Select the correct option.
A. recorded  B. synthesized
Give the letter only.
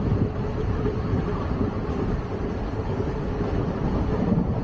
A